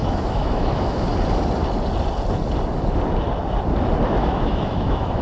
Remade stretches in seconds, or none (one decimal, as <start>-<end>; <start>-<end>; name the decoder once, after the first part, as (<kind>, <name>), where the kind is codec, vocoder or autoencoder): 0.0-1.1 (autoencoder, DAC-VAE); 4.2-5.2